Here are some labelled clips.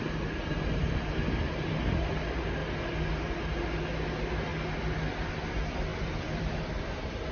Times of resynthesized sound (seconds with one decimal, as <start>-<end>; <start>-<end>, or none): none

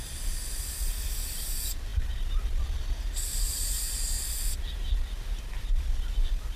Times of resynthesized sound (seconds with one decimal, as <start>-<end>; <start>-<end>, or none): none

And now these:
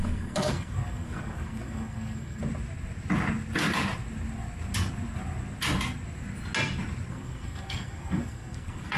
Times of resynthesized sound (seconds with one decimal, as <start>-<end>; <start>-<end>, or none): 0.0-2.4; 7.1-9.0